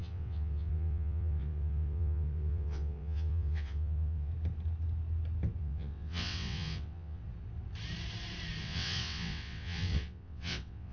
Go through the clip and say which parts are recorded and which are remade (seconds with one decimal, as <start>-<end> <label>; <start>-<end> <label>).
0.0-4.3 remade; 4.3-5.6 recorded; 5.6-7.2 remade; 7.2-8.6 recorded; 8.6-10.9 remade

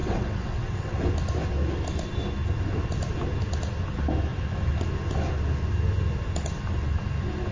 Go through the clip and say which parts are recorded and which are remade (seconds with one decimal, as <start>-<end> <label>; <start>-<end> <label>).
0.0-1.0 remade; 1.0-7.5 recorded

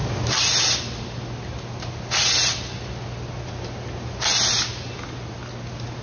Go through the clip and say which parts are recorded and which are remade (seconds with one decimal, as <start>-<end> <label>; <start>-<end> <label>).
0.0-6.0 recorded